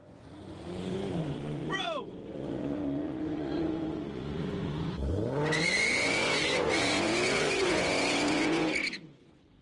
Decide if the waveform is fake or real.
fake